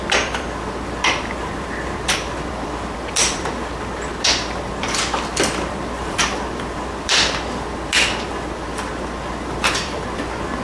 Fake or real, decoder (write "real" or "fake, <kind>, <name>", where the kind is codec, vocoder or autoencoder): fake, vocoder, BigVGAN v2